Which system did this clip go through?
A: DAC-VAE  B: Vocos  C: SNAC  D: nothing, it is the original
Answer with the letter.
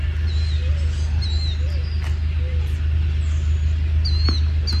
D